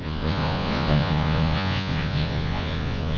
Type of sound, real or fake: fake